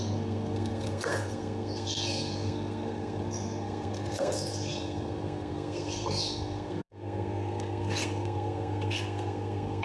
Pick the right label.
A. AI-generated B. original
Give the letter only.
A